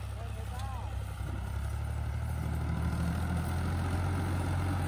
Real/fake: real